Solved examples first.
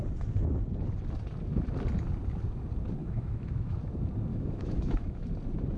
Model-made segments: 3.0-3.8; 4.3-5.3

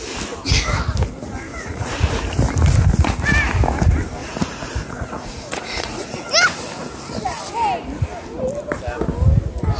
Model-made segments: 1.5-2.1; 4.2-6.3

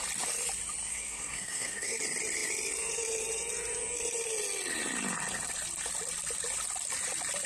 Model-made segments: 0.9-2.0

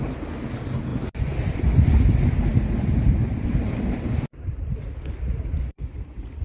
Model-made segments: 0.9-1.6; 2.5-6.4